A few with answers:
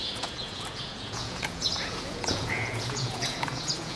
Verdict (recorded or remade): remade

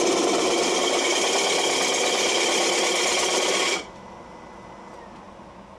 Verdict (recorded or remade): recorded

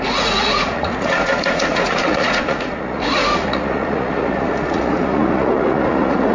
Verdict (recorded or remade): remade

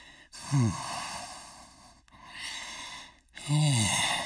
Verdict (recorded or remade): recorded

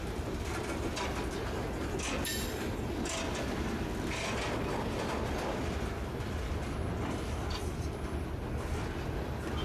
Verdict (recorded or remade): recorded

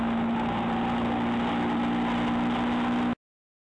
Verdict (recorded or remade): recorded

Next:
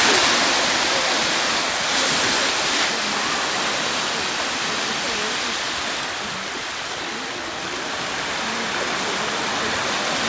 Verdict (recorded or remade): recorded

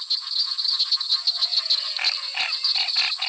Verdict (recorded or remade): recorded